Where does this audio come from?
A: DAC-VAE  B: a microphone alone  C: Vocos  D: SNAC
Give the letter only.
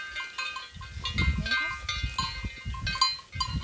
B